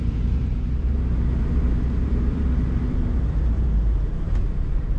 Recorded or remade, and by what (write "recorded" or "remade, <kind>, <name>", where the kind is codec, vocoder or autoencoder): remade, vocoder, BigVGAN v2